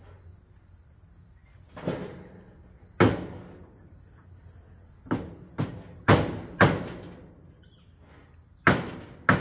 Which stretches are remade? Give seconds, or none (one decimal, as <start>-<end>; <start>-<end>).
none

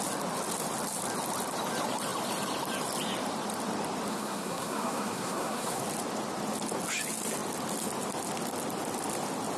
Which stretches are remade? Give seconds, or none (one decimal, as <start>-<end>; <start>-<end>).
4.1-5.8

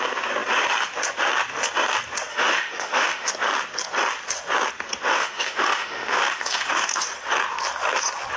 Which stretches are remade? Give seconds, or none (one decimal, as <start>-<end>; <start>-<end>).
2.3-3.3; 5.1-7.0

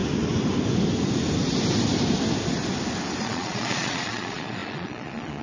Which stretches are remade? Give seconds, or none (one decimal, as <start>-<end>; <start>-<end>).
3.2-5.4

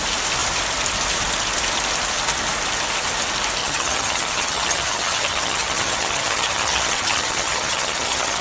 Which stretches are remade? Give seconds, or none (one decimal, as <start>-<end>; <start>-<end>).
3.6-8.4

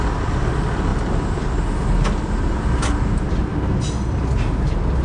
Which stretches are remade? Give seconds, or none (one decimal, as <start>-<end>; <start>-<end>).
none